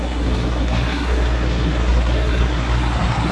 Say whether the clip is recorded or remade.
remade